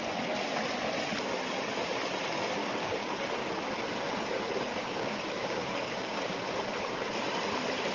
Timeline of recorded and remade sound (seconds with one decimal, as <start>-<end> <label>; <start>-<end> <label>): 0.0-2.6 recorded; 2.6-3.2 remade; 3.2-4.7 recorded; 4.7-6.5 remade; 6.5-7.9 recorded